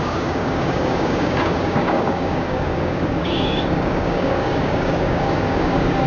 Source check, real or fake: fake